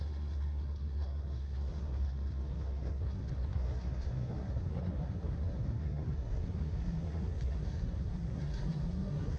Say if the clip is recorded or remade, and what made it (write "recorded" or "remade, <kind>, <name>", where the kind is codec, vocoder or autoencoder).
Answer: remade, codec, SNAC